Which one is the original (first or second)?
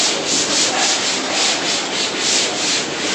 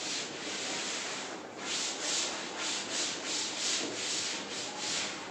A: first